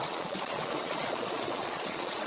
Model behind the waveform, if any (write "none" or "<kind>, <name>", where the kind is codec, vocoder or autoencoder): vocoder, Vocos